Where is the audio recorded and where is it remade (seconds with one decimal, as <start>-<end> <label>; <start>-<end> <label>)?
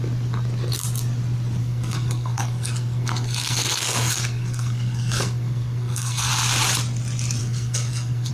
0.0-1.6 recorded; 1.6-6.3 remade; 6.3-7.4 recorded; 7.4-8.3 remade